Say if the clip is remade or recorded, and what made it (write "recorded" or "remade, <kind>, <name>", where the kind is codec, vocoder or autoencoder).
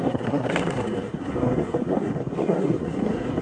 remade, codec, SNAC